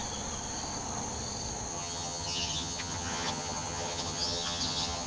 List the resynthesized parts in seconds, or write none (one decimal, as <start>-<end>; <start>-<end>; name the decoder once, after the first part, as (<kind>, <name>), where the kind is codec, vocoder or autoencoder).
1.7-5.1 (vocoder, HiFi-GAN)